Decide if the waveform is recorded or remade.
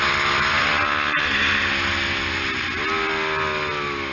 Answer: recorded